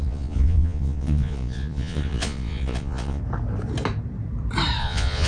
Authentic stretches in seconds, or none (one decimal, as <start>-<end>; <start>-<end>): 3.2-4.8